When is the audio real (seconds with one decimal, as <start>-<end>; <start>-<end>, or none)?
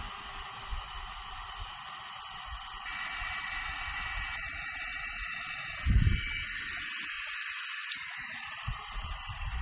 0.0-7.8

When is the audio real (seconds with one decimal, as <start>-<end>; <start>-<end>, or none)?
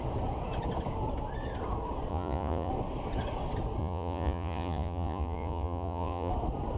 0.0-2.1; 2.7-3.8; 6.3-6.8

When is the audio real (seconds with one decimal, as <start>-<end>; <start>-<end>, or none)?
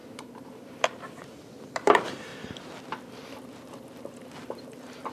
2.3-4.2